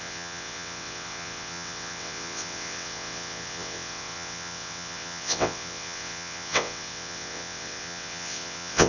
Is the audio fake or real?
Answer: fake